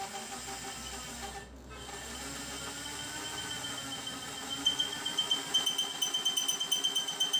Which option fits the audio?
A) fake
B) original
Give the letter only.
B